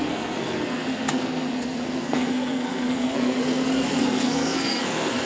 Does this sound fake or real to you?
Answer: fake